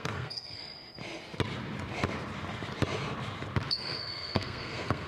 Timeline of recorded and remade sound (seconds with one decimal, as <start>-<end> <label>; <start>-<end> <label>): 0.0-0.6 remade; 0.6-3.7 recorded; 3.7-5.1 remade

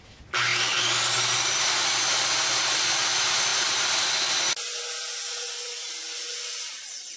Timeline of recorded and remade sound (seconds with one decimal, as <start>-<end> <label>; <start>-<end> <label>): 0.0-7.2 recorded